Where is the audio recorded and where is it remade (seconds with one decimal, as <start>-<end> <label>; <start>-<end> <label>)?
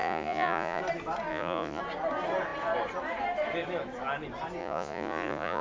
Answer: 0.0-0.8 remade; 0.8-1.3 recorded; 1.3-1.8 remade; 1.8-4.6 recorded; 4.6-5.6 remade